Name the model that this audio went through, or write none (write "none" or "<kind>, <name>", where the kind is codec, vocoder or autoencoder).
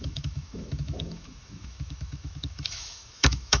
autoencoder, DAC-VAE